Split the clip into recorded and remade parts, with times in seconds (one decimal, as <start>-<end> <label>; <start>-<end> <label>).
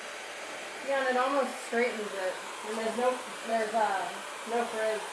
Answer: 0.0-5.1 recorded